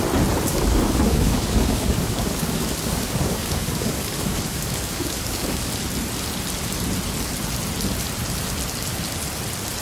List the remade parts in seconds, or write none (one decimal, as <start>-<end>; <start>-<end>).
0.5-5.7